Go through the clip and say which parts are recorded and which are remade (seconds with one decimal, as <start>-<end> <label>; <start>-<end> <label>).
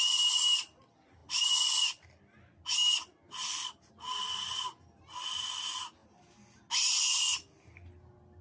0.0-8.4 recorded